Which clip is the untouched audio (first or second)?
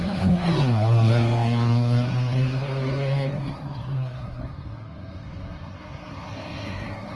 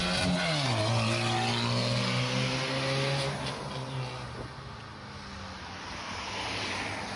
second